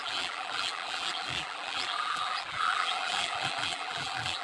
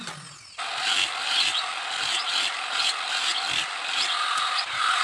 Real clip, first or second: second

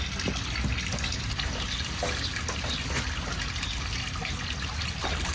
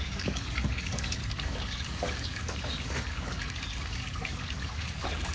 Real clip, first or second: first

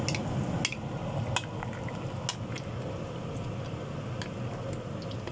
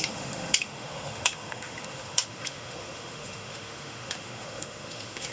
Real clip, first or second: first